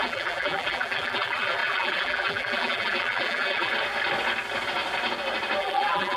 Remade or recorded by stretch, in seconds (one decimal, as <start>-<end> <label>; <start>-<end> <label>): 0.0-3.7 remade; 3.7-5.6 recorded; 5.6-6.2 remade